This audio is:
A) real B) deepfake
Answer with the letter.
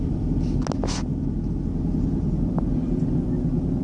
A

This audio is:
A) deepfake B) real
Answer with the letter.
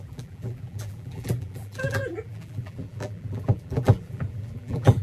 A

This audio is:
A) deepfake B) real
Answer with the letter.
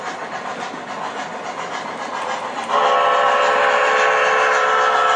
B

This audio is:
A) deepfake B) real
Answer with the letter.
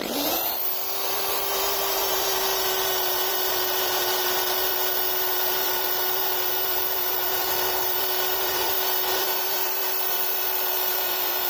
A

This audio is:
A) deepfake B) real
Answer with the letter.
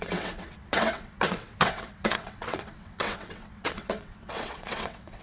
A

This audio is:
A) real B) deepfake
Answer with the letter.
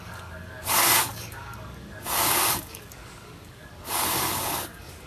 B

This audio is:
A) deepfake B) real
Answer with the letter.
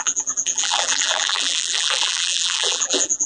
A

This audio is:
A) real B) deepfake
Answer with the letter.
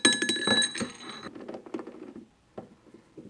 A